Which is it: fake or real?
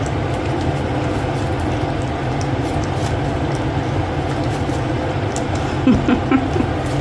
real